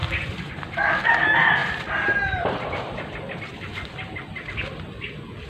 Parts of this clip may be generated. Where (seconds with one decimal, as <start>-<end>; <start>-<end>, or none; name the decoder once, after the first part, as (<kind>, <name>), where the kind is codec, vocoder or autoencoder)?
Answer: none